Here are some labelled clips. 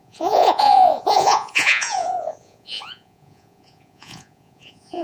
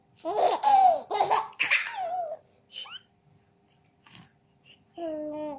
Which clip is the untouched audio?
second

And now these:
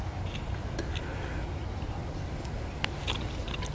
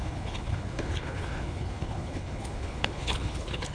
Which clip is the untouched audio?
first